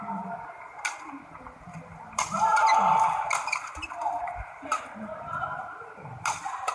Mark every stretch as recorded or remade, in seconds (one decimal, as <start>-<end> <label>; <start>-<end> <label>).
0.0-6.7 recorded